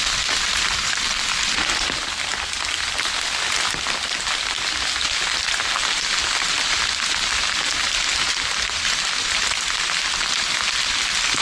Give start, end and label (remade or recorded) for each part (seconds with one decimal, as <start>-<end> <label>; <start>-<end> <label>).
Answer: 0.0-11.4 recorded